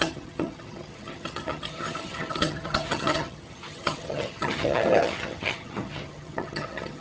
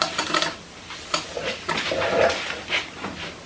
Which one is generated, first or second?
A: first